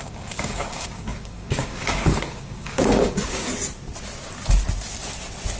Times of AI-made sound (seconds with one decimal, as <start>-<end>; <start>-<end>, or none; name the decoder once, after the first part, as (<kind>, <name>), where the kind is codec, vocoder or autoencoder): 0.0-3.5 (codec, DAC)